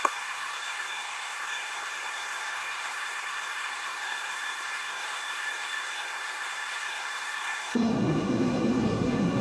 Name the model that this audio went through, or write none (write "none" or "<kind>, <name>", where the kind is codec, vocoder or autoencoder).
codec, SNAC